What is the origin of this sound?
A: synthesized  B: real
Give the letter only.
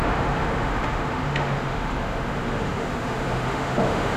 A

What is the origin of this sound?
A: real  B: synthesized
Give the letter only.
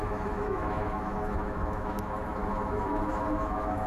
B